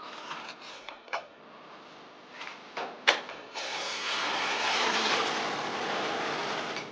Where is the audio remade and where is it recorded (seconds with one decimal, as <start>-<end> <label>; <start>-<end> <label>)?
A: 0.0-0.7 recorded; 0.7-1.4 remade; 1.4-3.3 recorded; 3.3-5.1 remade; 5.1-6.9 recorded